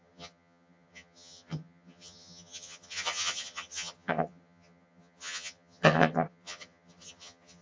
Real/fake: fake